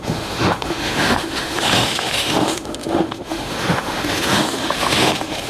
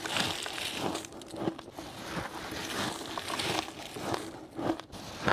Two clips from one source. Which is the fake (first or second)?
first